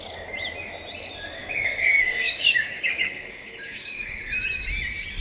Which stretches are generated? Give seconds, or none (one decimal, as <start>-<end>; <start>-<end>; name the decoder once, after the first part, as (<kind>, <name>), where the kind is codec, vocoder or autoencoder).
1.4-4.2 (codec, DAC)

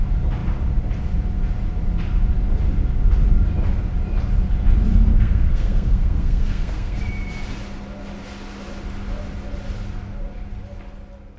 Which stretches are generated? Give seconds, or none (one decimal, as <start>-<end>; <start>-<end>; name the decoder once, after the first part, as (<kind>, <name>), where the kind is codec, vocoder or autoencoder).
4.9-7.0 (codec, SNAC)

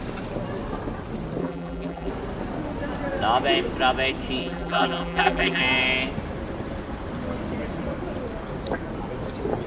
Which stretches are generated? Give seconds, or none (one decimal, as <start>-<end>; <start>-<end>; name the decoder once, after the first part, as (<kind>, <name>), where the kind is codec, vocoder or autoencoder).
1.4-2.1 (vocoder, BigVGAN v2); 4.4-5.6

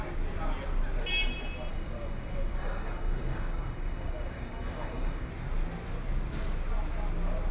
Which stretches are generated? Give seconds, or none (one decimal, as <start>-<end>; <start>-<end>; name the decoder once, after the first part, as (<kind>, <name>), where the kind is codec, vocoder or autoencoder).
1.7-5.3 (codec, DAC)

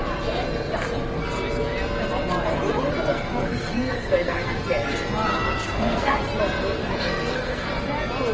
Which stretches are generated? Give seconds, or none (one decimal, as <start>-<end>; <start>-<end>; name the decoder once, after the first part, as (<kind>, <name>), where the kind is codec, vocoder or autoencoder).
3.1-4.6 (codec, SNAC); 5.3-6.2; 6.8-7.7

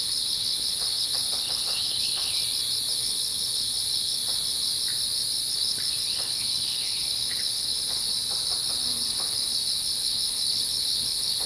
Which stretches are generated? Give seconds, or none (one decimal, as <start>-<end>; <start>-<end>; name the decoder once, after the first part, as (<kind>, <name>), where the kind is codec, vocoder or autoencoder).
0.0-2.4 (codec, HILCodec); 2.9-4.2; 5.5-8.1; 8.9-11.5

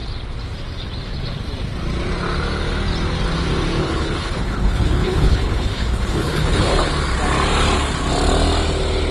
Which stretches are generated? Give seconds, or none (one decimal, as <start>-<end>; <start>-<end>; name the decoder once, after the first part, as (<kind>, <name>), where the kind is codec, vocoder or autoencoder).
3.8-6.9 (codec, HILCodec)

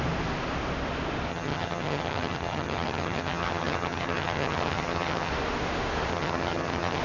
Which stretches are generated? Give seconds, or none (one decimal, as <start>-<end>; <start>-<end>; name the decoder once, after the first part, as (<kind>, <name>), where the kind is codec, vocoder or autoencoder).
1.3-5.3 (vocoder, HiFi-GAN); 6.1-7.0